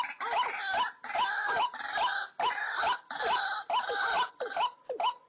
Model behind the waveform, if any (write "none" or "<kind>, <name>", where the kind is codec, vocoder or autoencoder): none